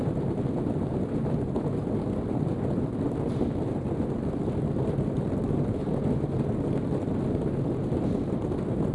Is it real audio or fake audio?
real